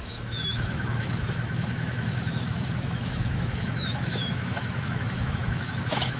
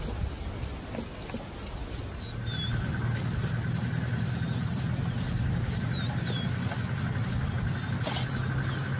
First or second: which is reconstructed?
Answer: first